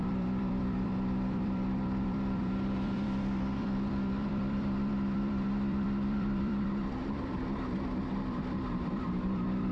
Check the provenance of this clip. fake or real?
fake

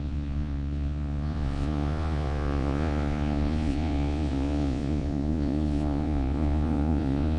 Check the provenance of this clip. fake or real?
fake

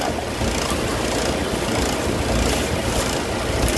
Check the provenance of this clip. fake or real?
real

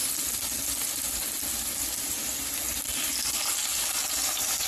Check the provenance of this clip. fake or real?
real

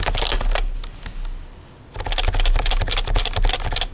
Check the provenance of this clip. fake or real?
real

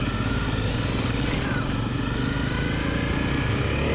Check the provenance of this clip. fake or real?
real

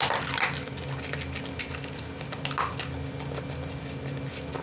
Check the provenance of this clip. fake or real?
real